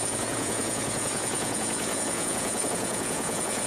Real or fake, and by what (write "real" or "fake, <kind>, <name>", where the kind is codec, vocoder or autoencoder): fake, vocoder, Vocos